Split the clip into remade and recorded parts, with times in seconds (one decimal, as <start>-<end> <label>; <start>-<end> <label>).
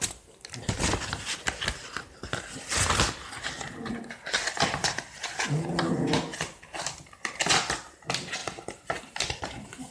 0.0-9.9 recorded